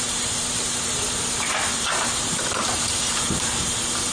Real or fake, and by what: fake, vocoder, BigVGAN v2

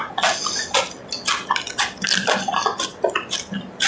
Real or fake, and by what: real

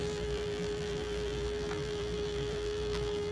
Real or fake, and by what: fake, vocoder, BigVGAN v2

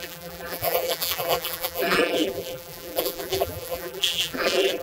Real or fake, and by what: fake, vocoder, BigVGAN v2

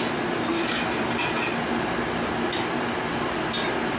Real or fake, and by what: real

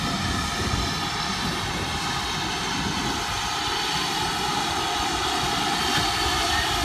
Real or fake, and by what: real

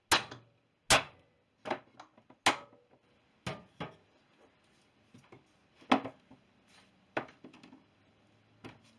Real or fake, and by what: real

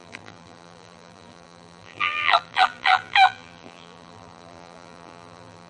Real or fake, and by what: fake, vocoder, BigVGAN v2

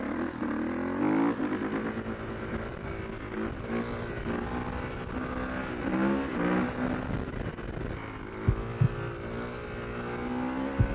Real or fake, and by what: real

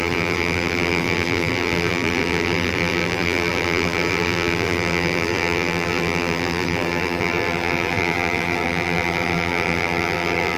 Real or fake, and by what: fake, vocoder, BigVGAN v2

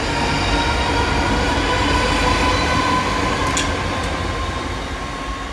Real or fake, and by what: real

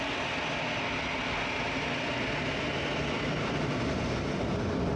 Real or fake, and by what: real